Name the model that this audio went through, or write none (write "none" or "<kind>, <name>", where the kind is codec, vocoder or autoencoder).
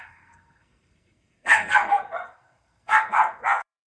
codec, SNAC